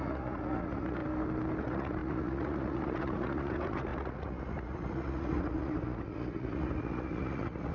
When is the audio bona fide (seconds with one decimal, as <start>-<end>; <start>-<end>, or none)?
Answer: 1.0-1.6